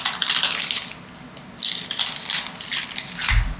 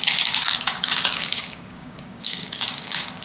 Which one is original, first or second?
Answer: first